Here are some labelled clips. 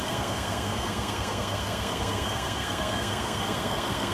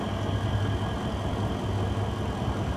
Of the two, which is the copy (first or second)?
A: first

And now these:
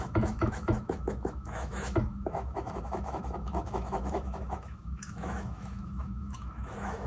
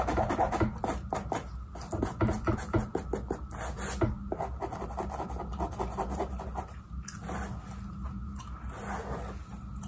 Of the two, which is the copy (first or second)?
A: first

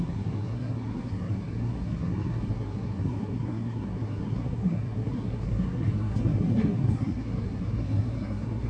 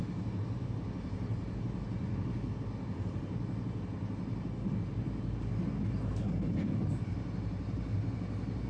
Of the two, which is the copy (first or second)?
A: first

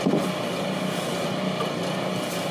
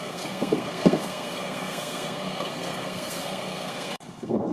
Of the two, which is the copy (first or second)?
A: second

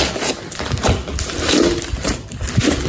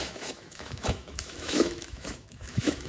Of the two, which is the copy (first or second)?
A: second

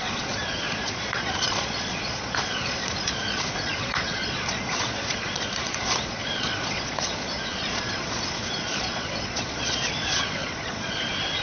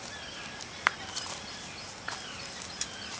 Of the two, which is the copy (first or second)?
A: first